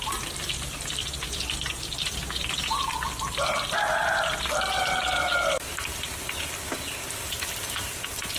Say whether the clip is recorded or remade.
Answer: remade